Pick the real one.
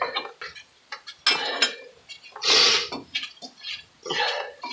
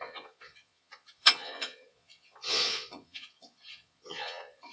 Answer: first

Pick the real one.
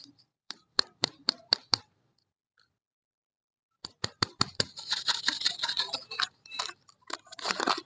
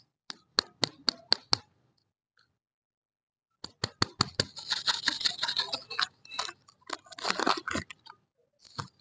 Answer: second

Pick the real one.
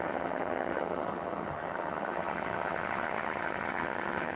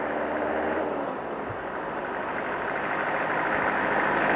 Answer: second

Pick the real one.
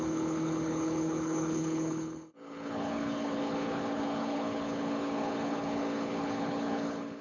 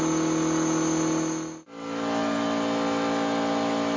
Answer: second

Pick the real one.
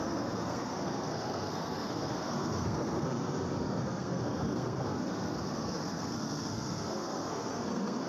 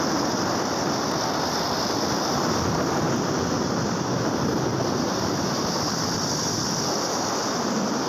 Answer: second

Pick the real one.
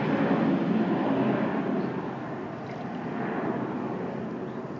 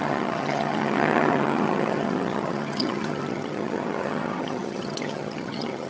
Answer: first